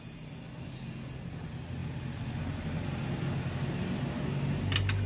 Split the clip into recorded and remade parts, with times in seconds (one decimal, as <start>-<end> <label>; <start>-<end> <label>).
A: 0.0-5.1 recorded